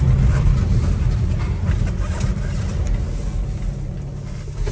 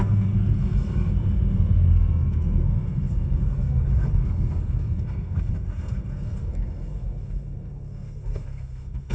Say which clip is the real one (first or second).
first